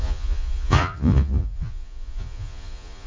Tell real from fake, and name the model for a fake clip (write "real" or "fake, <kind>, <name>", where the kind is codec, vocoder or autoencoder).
fake, vocoder, Vocos